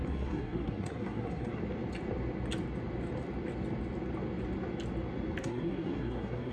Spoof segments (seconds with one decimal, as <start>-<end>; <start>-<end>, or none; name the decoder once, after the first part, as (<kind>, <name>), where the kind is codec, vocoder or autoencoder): 0.0-1.6 (codec, SNAC); 5.4-6.5